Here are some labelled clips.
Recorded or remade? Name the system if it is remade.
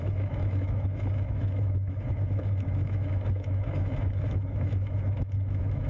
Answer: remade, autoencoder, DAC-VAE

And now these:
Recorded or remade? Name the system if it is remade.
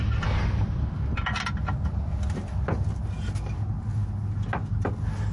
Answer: recorded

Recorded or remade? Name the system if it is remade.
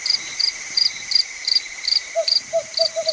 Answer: remade, vocoder, BigVGAN v2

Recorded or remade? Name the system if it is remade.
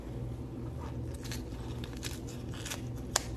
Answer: recorded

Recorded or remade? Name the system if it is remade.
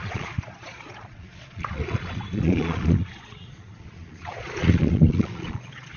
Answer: remade, vocoder, Vocos